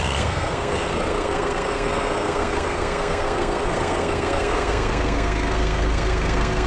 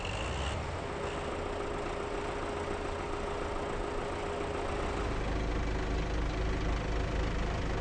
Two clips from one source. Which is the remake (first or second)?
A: first